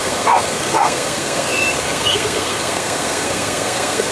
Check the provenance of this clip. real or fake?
fake